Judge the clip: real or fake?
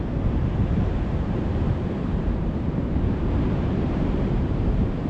fake